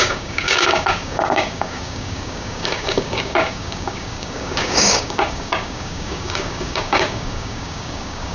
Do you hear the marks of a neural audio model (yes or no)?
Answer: yes